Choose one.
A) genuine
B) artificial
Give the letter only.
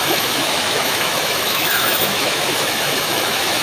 B